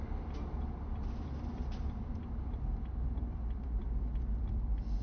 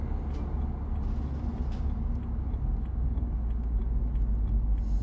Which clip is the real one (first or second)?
second